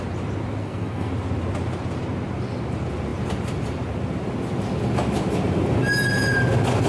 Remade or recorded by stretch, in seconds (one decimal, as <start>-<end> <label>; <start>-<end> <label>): 0.0-0.6 recorded; 0.6-1.1 remade; 1.1-6.9 recorded